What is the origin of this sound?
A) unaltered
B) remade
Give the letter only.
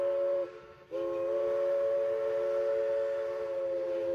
A